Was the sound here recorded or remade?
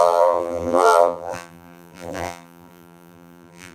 remade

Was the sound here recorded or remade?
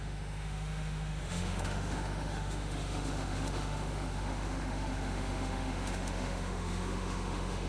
remade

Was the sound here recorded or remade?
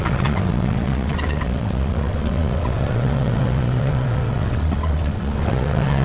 remade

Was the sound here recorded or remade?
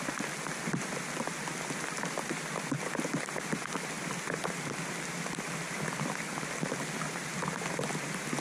recorded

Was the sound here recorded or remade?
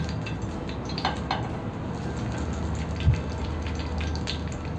recorded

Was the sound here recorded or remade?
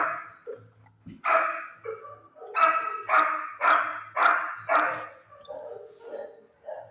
recorded